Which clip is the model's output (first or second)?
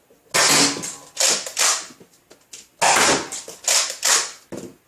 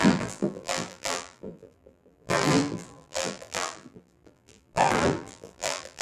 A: second